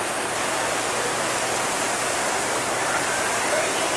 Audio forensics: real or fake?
real